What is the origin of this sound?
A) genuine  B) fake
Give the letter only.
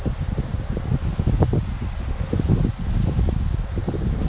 A